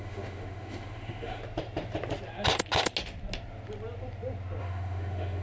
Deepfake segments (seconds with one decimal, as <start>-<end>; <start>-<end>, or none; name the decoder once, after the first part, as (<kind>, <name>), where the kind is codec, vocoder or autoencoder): 0.0-1.4 (autoencoder, DAC-VAE); 4.6-5.4